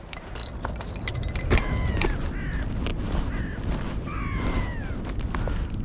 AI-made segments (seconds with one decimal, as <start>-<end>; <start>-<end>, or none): none